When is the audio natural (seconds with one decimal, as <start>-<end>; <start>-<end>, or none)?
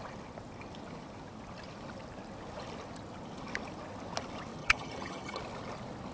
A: 0.0-4.6; 5.4-6.1